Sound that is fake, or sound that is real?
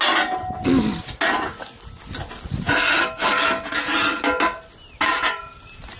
real